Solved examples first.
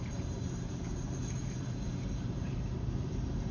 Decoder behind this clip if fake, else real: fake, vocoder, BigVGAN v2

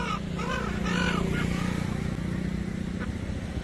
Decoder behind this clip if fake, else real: real